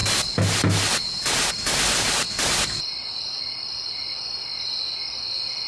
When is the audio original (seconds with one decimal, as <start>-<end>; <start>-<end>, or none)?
0.0-4.0; 4.5-5.7